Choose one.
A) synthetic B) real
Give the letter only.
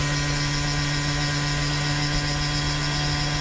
B